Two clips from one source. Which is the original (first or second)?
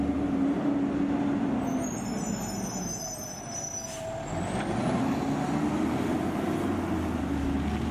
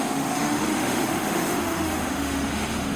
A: first